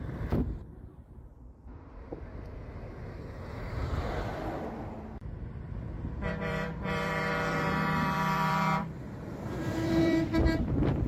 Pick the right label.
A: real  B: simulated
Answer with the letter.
B